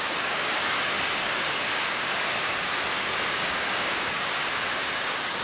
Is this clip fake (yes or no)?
yes